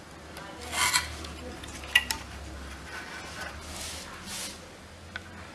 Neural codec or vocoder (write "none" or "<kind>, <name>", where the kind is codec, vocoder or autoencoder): none